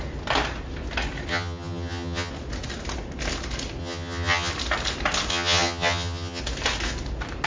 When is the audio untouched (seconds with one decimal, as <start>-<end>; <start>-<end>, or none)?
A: 0.0-1.3; 2.3-3.8; 4.5-5.3; 6.4-7.5